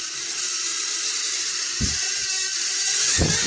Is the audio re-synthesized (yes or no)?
no